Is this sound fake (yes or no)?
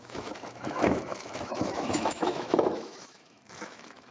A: yes